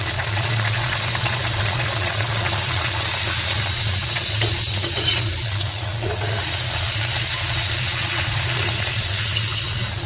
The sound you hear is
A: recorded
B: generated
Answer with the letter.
B